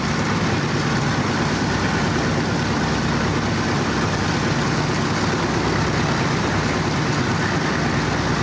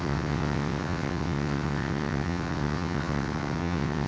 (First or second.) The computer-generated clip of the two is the second